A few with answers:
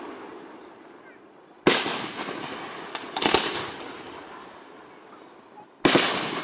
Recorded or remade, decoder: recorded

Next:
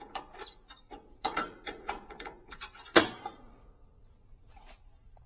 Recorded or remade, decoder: remade, vocoder, Vocos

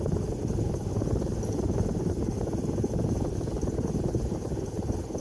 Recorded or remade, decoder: recorded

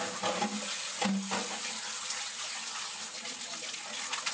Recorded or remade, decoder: recorded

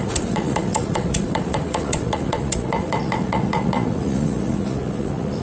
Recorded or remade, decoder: remade, vocoder, Vocos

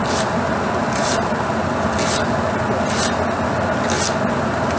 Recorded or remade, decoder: recorded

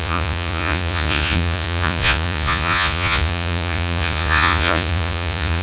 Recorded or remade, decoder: remade, vocoder, Vocos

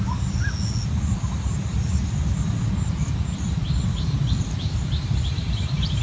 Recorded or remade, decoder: recorded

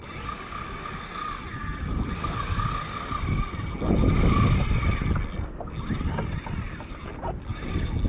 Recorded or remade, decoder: recorded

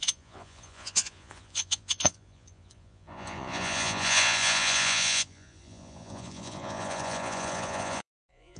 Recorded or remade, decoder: remade, vocoder, Vocos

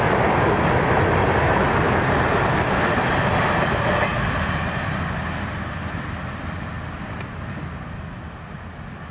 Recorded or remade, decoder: recorded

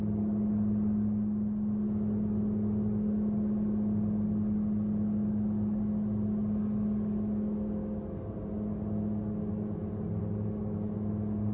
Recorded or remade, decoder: recorded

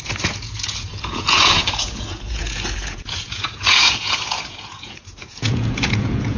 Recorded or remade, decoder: remade, vocoder, Vocos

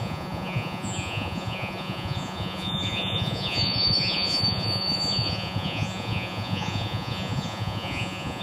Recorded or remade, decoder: remade, vocoder, Vocos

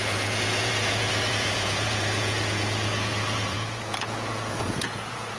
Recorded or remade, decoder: remade, vocoder, Vocos